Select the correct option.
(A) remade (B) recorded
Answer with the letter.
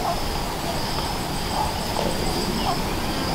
B